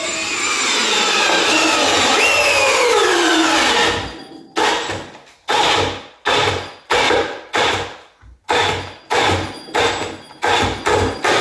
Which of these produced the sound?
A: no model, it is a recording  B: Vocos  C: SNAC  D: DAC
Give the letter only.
A